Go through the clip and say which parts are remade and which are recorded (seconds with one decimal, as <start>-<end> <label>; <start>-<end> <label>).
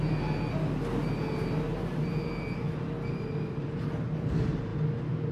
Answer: 0.0-5.3 recorded